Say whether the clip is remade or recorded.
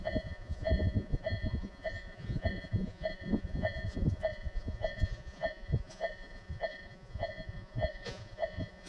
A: remade